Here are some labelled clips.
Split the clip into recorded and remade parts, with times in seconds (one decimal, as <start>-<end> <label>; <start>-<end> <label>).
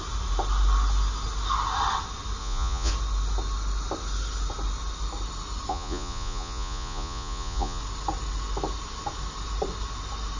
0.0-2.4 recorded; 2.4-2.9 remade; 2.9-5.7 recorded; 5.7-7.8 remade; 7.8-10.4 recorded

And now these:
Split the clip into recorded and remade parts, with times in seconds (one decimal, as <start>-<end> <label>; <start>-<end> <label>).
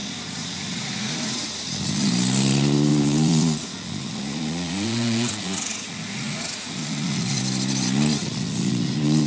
0.0-2.1 remade; 2.1-2.9 recorded; 2.9-7.4 remade; 7.4-8.2 recorded; 8.2-9.3 remade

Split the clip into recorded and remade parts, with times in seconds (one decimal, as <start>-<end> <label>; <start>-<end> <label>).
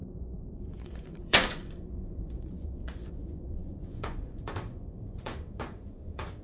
0.0-6.4 remade